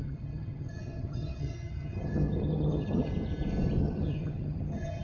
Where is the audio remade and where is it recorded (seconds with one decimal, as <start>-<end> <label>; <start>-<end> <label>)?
0.0-3.1 remade; 3.1-3.8 recorded; 3.8-5.0 remade